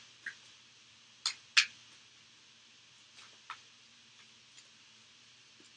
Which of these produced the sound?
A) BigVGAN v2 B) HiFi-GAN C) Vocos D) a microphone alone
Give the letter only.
D